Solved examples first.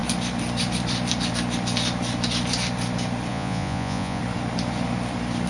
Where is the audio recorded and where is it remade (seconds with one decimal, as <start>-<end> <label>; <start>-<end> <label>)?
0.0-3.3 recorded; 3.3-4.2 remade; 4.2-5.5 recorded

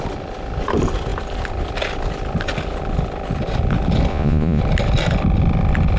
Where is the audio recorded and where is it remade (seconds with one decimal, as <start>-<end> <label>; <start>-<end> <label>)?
0.0-4.1 recorded; 4.1-4.6 remade; 4.6-6.0 recorded

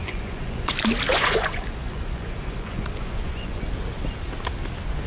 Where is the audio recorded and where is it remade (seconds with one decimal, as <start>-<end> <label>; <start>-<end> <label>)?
0.0-0.7 remade; 0.7-1.1 recorded; 1.1-3.6 remade; 3.6-5.1 recorded

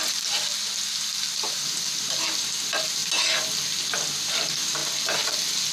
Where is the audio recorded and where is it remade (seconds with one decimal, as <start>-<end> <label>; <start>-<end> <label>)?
0.0-5.7 recorded

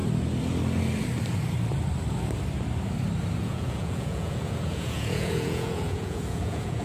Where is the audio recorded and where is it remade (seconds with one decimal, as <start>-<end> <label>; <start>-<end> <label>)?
0.0-3.4 recorded; 3.4-6.8 remade